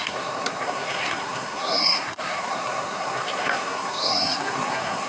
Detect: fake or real fake